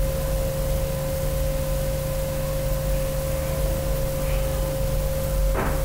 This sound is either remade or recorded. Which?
recorded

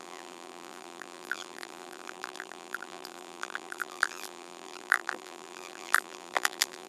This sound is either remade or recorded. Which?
remade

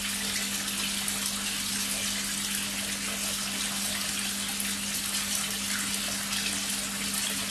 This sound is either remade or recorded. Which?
recorded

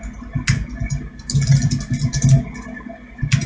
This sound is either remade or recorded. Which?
recorded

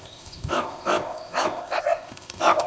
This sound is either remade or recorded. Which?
remade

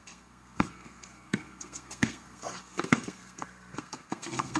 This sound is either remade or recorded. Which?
remade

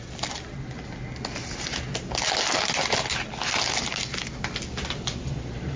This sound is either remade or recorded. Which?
recorded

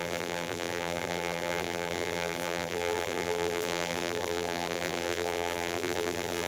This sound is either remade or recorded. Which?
remade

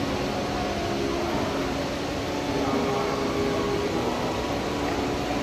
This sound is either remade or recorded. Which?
recorded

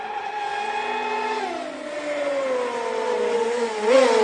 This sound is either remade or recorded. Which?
recorded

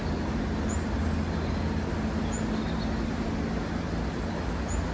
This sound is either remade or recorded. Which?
recorded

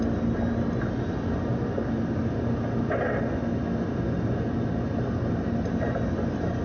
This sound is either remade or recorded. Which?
recorded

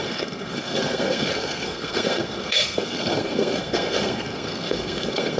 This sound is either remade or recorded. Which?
remade